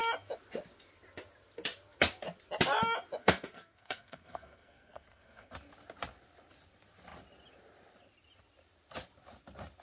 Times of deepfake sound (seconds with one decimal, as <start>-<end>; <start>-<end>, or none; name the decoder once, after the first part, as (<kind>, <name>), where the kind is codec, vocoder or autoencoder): 3.2-5.5 (codec, SNAC)